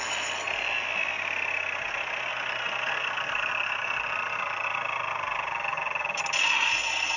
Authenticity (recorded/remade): recorded